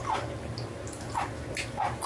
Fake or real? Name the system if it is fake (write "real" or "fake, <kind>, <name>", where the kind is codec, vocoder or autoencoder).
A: real